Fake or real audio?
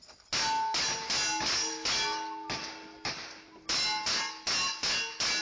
real